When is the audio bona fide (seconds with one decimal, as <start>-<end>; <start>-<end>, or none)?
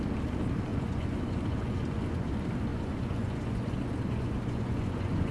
0.0-0.7; 2.3-2.7